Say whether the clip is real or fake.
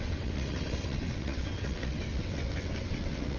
fake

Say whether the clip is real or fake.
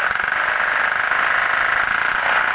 real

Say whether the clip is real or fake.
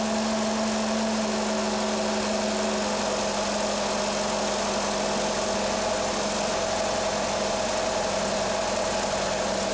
real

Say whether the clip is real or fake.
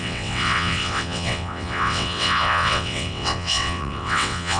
fake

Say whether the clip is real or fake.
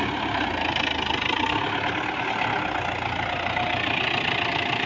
real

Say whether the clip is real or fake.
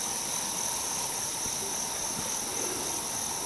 real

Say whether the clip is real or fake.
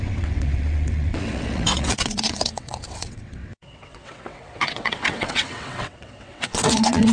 fake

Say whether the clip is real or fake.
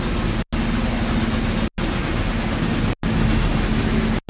real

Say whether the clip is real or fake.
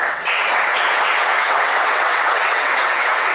fake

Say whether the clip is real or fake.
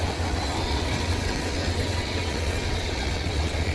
fake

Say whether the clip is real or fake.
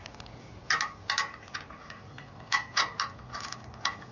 real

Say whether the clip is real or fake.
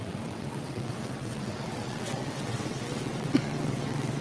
fake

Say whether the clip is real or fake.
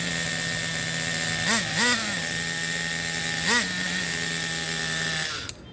real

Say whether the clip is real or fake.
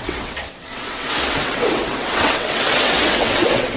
fake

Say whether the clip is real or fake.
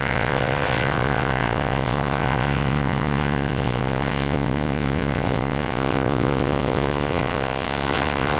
fake